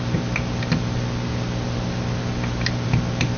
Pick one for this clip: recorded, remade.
recorded